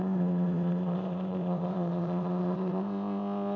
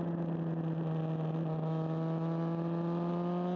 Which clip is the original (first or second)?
second